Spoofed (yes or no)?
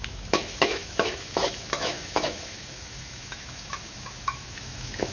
yes